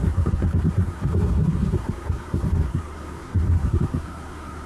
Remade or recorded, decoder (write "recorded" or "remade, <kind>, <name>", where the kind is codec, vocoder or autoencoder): remade, codec, SNAC